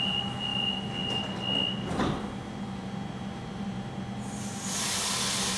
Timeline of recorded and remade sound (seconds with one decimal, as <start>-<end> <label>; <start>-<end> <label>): 0.0-5.6 recorded

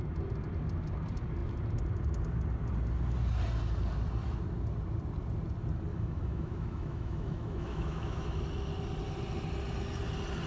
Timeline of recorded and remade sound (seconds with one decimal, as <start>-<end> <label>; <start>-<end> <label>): 0.0-5.9 recorded; 5.9-8.4 remade; 8.4-10.5 recorded

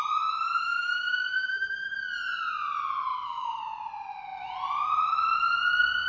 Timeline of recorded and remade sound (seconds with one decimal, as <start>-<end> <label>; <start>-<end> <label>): 0.0-0.6 recorded; 0.6-1.9 remade; 1.9-3.1 recorded; 3.1-3.6 remade; 3.6-6.1 recorded